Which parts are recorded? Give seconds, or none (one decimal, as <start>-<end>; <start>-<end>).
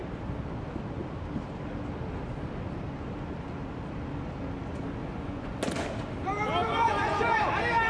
0.0-5.0; 5.6-6.6; 7.4-7.9